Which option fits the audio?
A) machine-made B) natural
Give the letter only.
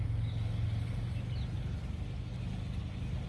B